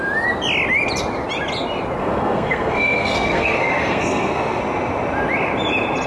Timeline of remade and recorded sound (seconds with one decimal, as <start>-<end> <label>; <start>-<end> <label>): 0.0-2.0 recorded; 2.0-4.6 remade; 4.6-6.1 recorded